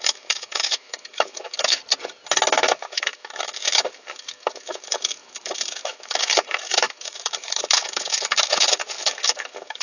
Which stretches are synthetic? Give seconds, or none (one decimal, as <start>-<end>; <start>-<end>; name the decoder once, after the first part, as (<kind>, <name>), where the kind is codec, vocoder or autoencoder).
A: 0.0-1.8 (autoencoder, DAC-VAE); 2.7-9.8